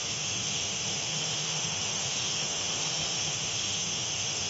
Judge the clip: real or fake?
fake